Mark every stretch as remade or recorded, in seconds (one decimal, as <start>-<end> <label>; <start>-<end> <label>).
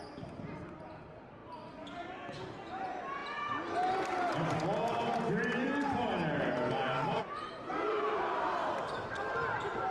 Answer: 0.0-1.4 recorded; 1.4-2.1 remade; 2.1-4.9 recorded; 4.9-9.1 remade; 9.1-9.9 recorded